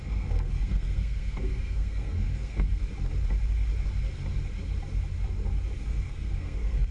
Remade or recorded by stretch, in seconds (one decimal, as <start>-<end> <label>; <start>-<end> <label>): 0.0-2.8 remade; 2.8-5.8 recorded; 5.8-6.9 remade